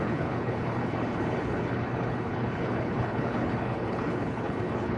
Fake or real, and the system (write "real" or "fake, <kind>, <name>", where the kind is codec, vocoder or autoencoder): fake, codec, HILCodec